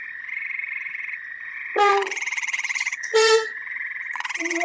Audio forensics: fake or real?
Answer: fake